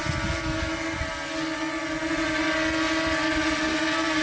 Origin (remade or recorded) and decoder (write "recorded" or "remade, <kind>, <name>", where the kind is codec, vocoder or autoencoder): recorded